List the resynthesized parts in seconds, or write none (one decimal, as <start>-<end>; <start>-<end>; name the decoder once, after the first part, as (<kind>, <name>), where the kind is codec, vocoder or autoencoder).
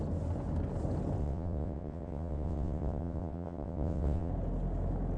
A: 1.2-4.3 (vocoder, WaveNeXt)